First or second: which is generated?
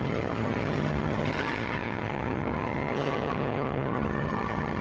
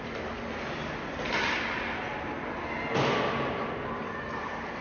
first